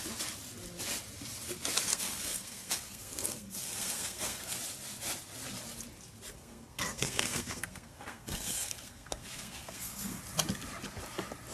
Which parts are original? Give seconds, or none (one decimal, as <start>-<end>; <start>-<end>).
0.0-1.9; 4.6-6.3; 10.2-11.5